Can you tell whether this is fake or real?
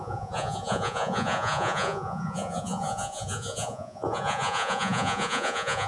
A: fake